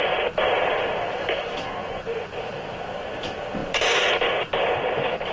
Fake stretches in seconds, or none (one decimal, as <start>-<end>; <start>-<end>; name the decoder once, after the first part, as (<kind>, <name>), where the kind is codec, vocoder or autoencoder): 1.8-2.3 (vocoder, Vocos)